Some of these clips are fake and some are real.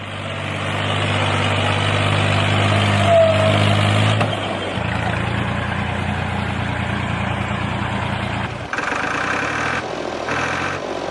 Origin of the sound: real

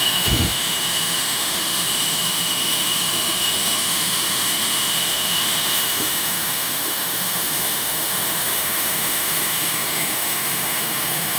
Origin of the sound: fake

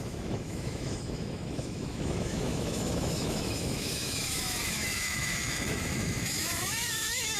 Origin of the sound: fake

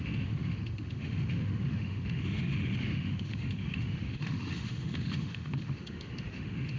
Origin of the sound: fake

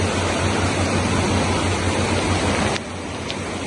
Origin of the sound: real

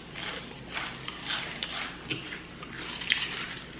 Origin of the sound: real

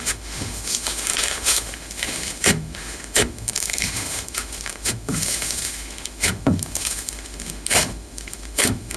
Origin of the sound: fake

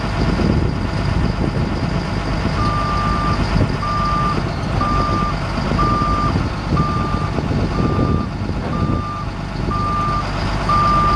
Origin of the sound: real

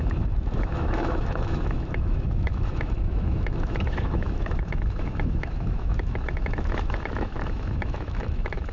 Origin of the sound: fake